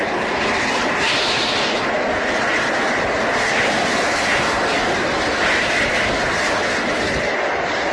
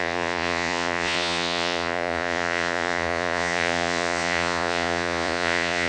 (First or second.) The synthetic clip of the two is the second